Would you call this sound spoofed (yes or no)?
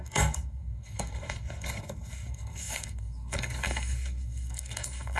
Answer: yes